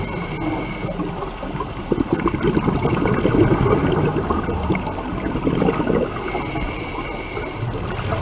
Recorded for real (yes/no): yes